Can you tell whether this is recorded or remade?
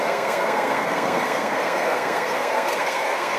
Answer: remade